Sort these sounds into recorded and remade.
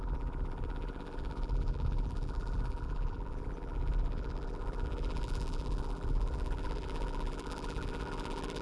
remade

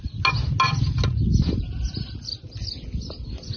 recorded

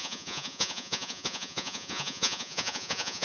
remade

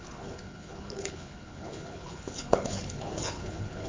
remade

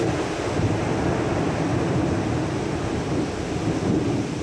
recorded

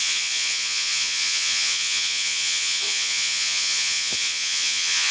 remade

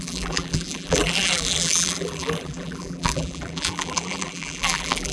remade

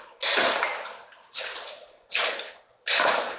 recorded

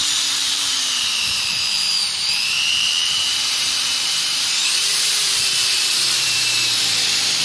remade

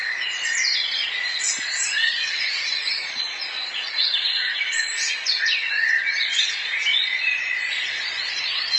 remade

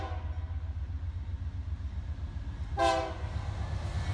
recorded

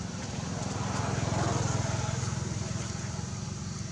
recorded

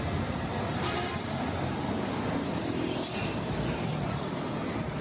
recorded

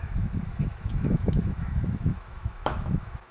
remade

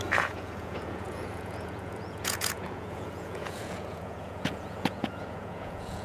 remade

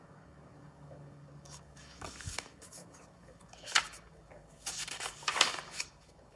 remade